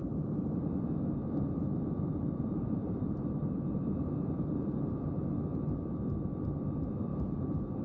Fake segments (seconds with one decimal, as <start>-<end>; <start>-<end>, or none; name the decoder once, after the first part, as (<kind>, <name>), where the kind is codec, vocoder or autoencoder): 0.0-0.7 (vocoder, BigVGAN v2); 2.1-5.2; 7.1-7.8